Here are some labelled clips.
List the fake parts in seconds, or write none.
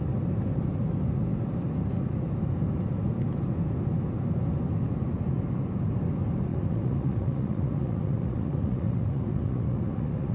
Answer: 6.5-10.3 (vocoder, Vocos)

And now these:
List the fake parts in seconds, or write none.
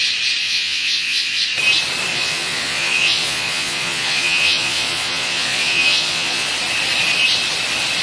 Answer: 0.4-1.4 (vocoder, Vocos); 2.1-6.5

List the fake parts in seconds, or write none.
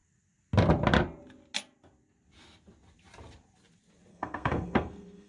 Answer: 4.1-5.3 (codec, SNAC)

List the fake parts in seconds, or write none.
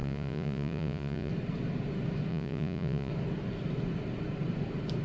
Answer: 0.0-1.3 (vocoder, Vocos); 2.3-3.1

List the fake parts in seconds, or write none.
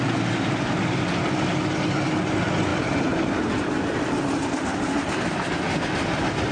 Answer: none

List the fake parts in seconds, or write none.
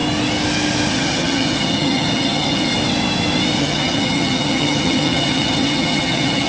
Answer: 0.9-2.7 (vocoder, HiFi-GAN); 3.6-6.5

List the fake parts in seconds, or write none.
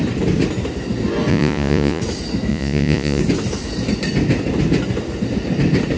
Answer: 1.3-2.0 (vocoder, Vocos); 2.5-3.2